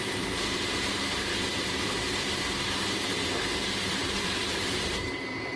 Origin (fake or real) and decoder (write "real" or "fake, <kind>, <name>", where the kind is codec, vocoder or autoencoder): fake, vocoder, BigVGAN v2